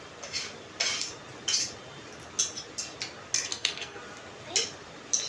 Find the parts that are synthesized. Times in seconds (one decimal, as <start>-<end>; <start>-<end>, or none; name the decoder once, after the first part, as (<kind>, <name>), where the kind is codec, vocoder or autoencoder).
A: 3.5-4.0 (codec, SNAC)